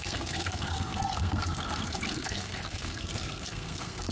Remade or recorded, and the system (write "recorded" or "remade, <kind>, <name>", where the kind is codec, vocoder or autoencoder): remade, codec, SNAC